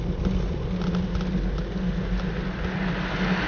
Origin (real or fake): real